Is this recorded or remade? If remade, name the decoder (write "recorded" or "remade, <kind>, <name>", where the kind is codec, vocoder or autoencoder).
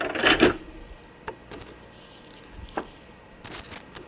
recorded